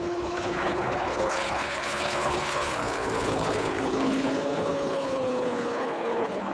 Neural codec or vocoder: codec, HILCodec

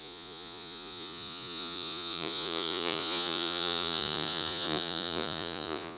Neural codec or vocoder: vocoder, Vocos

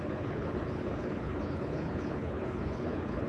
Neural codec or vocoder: codec, HILCodec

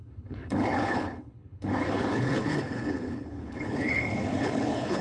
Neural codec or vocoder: codec, HILCodec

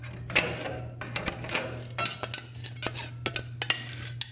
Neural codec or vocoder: none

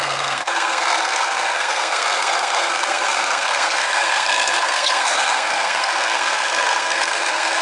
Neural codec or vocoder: codec, SNAC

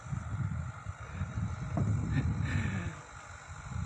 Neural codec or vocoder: none